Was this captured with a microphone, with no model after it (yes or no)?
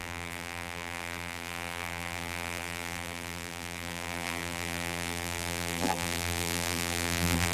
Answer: no